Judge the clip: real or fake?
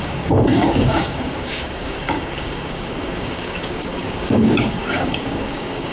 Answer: fake